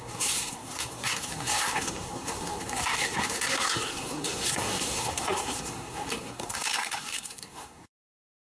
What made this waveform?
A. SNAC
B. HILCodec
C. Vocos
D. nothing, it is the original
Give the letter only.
A